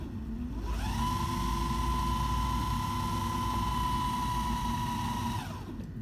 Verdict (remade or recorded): recorded